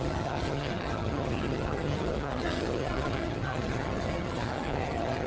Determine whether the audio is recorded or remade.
remade